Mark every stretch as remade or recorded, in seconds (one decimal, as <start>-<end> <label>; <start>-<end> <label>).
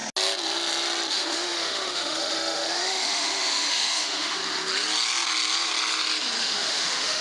0.0-1.1 recorded; 1.1-4.4 remade; 4.4-6.4 recorded; 6.4-7.2 remade